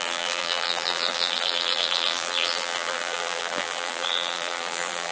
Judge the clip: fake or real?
fake